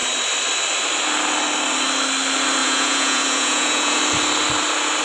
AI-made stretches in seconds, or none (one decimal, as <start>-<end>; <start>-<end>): 2.6-4.0